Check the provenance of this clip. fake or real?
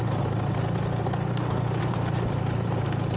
real